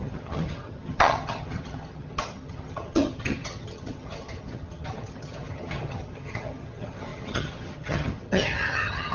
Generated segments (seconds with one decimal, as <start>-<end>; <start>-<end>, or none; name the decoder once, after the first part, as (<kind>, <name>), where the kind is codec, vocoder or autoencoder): 0.0-9.1 (vocoder, HiFi-GAN)